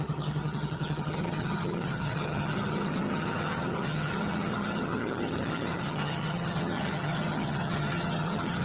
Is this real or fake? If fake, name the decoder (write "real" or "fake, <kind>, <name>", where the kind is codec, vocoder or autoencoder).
fake, vocoder, HiFi-GAN